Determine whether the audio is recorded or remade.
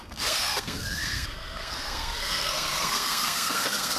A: remade